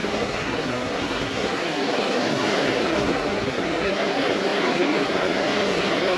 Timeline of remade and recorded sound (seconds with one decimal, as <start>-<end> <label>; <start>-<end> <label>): 0.0-6.2 remade